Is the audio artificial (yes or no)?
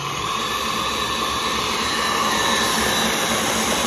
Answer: yes